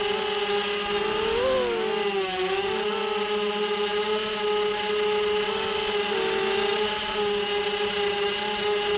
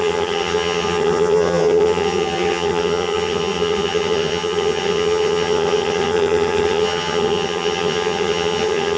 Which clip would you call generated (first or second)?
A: second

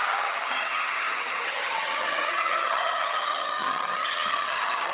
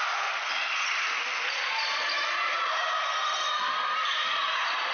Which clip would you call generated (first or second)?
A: first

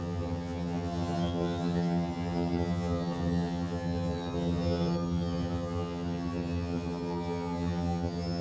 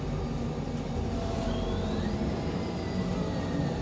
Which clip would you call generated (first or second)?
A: first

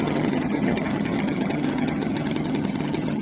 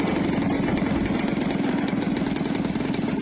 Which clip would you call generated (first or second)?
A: first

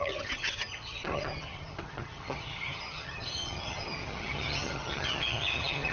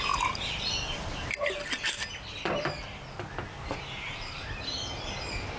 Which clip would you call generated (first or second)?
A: first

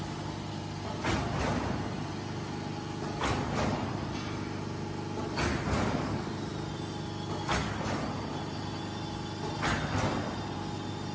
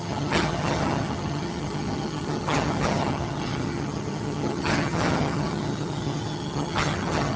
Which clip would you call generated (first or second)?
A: second